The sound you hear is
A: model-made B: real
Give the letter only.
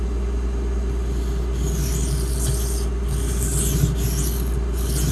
B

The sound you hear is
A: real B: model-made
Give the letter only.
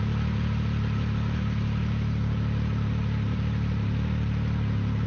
A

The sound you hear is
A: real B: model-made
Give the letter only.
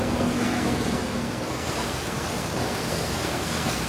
B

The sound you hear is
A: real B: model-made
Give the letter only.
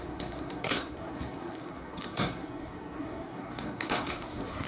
B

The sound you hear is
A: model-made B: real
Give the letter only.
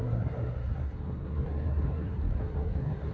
A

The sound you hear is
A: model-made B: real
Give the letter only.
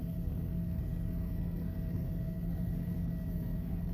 A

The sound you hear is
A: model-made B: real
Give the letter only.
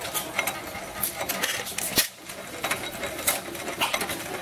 B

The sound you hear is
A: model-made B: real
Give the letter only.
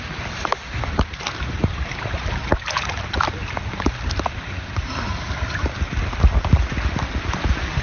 B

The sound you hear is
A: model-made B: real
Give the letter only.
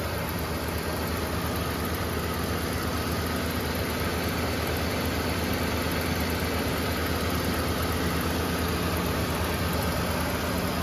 B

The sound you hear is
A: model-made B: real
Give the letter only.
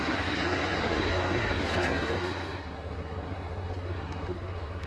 A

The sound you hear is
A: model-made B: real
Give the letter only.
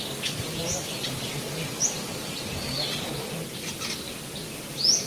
B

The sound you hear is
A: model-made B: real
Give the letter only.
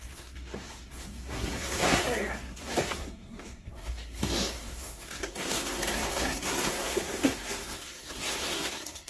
A